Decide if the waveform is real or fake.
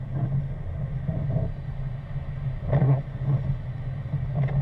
real